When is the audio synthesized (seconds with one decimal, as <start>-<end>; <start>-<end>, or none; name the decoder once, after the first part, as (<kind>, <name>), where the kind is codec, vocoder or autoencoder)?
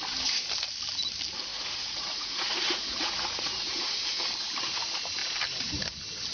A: 1.5-4.2 (vocoder, Vocos)